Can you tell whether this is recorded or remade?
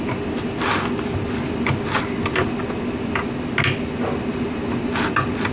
recorded